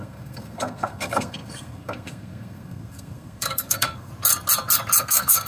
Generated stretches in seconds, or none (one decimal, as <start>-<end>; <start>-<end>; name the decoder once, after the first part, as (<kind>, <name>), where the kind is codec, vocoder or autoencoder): 0.0-4.1 (codec, SNAC); 5.0-5.5